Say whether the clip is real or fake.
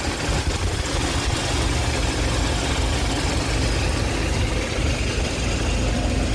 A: real